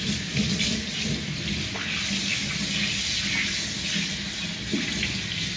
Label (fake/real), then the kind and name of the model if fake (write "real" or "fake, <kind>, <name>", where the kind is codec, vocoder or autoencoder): real